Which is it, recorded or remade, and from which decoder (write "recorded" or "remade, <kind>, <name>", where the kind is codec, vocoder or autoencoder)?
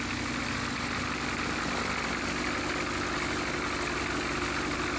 recorded